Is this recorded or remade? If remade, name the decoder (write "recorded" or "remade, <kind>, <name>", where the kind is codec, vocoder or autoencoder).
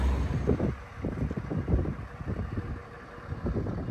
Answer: recorded